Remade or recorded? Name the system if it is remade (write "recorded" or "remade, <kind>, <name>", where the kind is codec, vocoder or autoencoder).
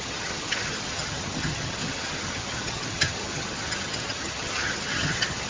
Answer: remade, vocoder, HiFi-GAN